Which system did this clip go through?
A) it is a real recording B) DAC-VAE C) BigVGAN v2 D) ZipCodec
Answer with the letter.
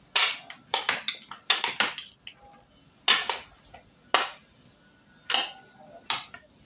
A